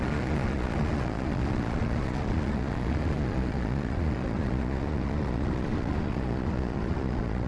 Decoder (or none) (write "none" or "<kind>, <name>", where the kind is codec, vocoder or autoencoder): vocoder, Vocos